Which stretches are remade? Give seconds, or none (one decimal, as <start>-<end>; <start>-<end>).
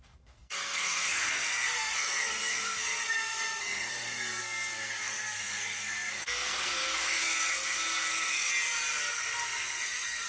0.0-8.5; 9.1-10.3